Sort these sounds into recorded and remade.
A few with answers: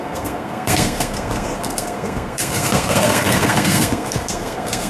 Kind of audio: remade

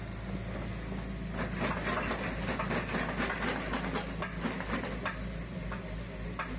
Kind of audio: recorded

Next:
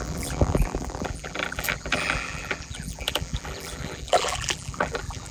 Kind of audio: remade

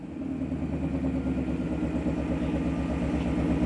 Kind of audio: recorded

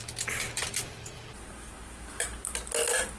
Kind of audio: recorded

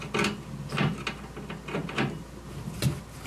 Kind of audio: recorded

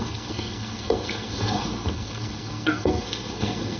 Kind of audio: remade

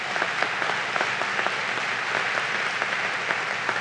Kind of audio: recorded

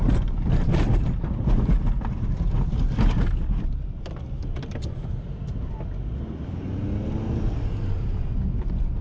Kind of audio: recorded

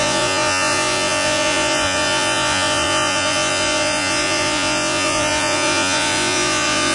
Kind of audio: remade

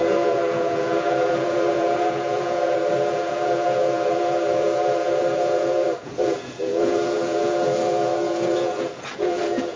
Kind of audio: remade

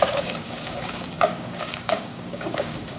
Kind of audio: remade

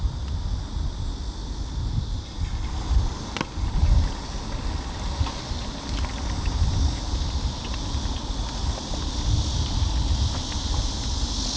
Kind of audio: recorded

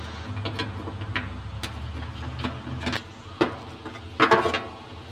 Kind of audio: recorded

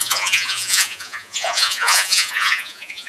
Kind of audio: remade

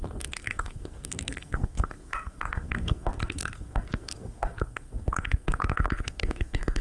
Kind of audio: remade